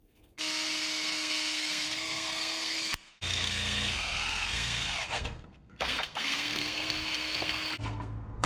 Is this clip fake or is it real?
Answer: fake